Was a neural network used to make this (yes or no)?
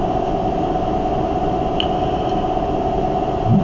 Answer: no